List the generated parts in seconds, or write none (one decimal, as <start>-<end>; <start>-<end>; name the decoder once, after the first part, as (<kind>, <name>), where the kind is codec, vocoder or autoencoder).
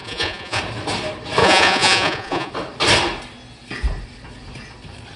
0.0-0.6 (vocoder, Vocos); 1.4-2.5